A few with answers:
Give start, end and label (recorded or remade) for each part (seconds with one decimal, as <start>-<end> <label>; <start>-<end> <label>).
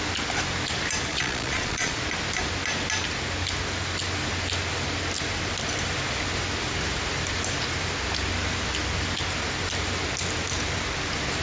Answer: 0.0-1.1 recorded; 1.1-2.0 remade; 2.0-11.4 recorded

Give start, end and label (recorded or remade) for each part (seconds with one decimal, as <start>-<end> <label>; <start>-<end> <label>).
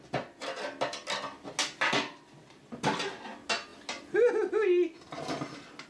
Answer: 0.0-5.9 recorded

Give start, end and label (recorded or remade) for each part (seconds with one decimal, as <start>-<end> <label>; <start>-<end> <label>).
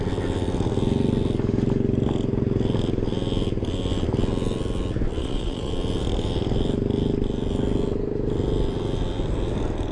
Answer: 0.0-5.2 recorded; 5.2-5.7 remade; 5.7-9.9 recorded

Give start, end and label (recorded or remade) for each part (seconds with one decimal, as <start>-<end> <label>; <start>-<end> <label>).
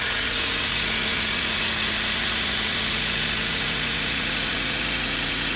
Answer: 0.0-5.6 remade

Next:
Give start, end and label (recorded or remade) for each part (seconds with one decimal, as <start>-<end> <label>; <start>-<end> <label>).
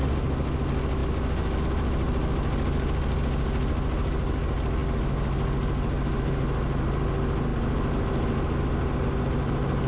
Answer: 0.0-9.9 recorded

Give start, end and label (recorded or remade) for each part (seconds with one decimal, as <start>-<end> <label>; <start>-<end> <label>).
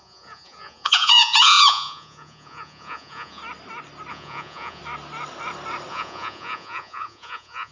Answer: 0.0-3.4 remade; 3.4-4.1 recorded; 4.1-4.8 remade; 4.8-5.9 recorded; 5.9-7.7 remade